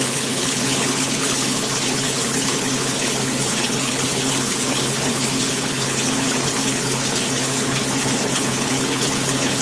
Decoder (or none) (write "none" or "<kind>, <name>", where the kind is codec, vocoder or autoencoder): codec, HILCodec